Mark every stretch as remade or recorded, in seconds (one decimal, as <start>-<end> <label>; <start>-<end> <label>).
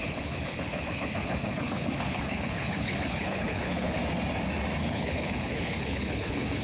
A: 0.0-4.0 remade; 4.0-4.8 recorded; 4.8-6.6 remade